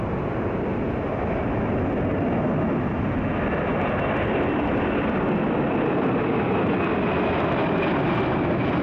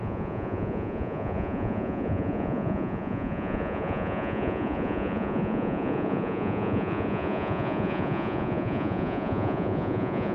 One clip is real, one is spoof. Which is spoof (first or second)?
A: second